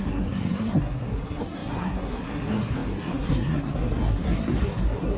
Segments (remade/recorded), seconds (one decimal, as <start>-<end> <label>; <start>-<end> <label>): 0.0-5.2 remade

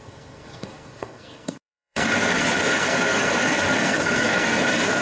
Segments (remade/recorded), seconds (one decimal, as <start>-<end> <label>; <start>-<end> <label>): 0.0-5.0 remade

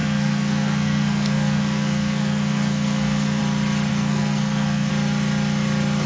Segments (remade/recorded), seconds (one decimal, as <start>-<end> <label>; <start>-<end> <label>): 0.0-3.4 remade; 3.4-3.9 recorded; 3.9-4.9 remade; 4.9-6.1 recorded